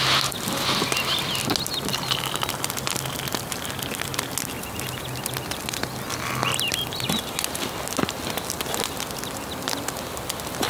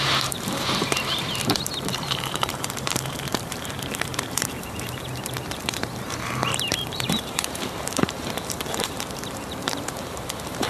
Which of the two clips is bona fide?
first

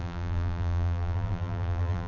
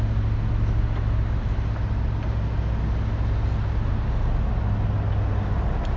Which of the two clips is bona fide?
second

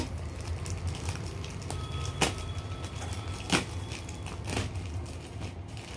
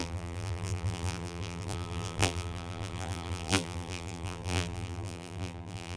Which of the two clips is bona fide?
first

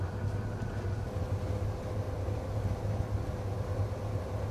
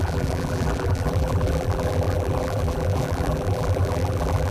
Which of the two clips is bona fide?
first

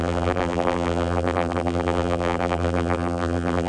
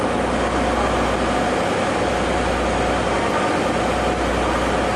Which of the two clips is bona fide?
second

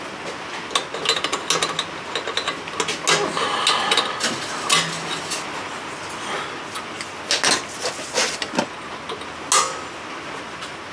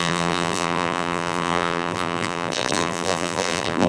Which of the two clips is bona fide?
first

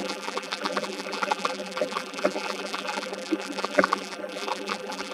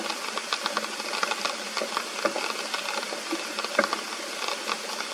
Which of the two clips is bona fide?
second